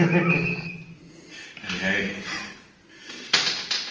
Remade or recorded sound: recorded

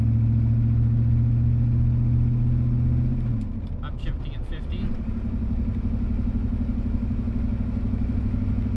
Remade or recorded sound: recorded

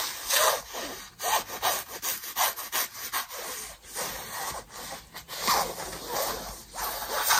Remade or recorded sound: recorded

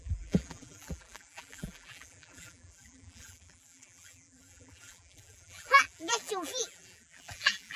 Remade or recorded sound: remade